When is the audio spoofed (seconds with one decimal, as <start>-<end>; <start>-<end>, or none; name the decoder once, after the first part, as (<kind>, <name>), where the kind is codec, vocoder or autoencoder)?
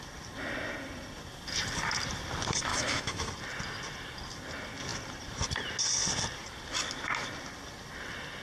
2.7-3.3 (autoencoder, DAC-VAE)